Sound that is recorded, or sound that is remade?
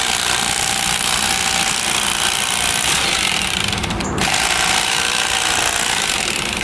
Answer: remade